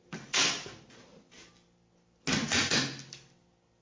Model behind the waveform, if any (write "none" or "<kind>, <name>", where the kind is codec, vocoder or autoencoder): none